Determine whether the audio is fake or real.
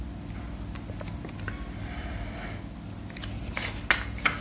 real